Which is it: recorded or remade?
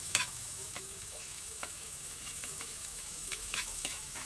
remade